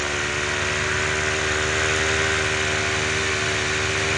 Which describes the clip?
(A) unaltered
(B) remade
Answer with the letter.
A